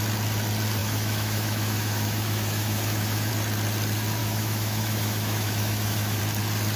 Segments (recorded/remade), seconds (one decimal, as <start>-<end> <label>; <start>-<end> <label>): 0.0-0.8 recorded; 0.8-3.3 remade; 3.3-4.2 recorded; 4.2-6.2 remade; 6.2-6.8 recorded